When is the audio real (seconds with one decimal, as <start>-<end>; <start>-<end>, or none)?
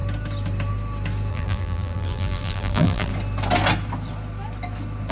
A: 0.0-1.3; 3.1-5.1